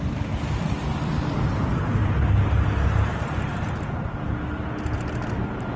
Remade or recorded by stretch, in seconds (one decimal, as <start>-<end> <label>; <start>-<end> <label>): 0.0-5.8 recorded